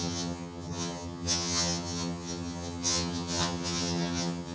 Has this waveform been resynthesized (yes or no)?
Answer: yes